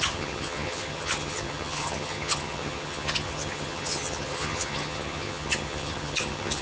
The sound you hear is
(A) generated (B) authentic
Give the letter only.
A